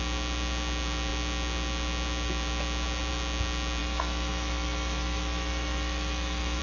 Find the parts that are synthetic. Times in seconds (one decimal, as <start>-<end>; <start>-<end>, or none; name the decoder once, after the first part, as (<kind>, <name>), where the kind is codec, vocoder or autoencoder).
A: 3.8-6.6 (autoencoder, DAC-VAE)